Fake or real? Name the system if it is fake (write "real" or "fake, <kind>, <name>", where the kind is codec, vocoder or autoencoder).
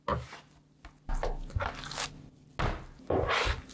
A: real